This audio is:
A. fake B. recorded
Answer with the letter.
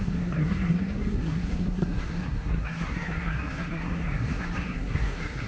A